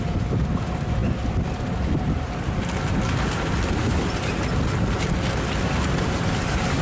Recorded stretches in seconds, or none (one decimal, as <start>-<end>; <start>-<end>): 0.0-6.8